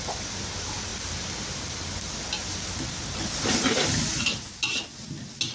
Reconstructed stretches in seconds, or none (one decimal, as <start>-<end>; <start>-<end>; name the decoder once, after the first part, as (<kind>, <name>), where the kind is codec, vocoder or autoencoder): none